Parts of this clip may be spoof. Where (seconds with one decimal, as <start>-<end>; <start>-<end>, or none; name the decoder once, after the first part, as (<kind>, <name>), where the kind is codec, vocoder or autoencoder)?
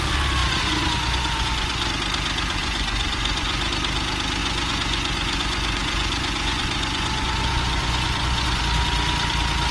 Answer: 0.4-1.9 (vocoder, Vocos); 2.6-3.7; 4.4-8.6